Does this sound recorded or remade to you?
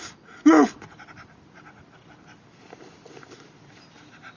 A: recorded